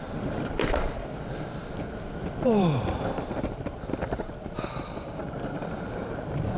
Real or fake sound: fake